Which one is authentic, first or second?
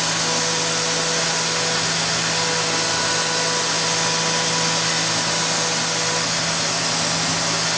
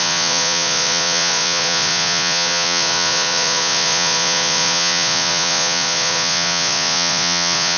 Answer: first